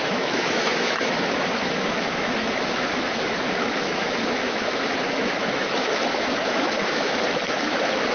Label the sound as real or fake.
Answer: fake